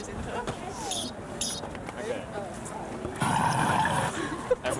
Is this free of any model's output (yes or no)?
yes